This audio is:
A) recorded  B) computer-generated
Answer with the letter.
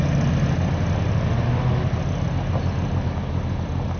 A